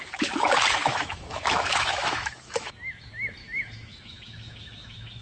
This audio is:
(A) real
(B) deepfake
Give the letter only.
B